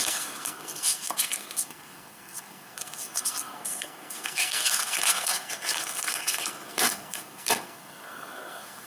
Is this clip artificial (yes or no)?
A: yes